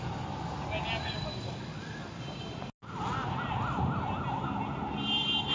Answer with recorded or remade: recorded